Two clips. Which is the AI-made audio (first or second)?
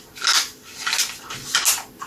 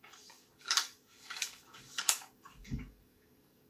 second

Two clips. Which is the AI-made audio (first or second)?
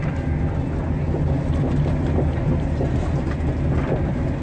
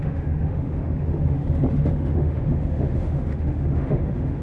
second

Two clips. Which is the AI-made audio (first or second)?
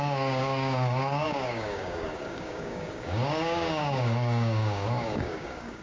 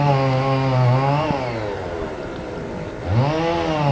first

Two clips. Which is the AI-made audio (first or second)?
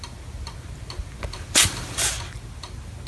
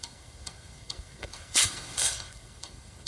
second